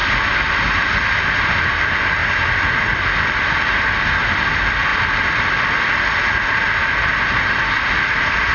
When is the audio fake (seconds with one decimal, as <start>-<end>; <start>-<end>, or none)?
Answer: none